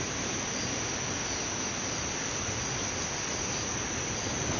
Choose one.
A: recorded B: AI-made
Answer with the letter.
A